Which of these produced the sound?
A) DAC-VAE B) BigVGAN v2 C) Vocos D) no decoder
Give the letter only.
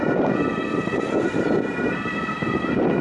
B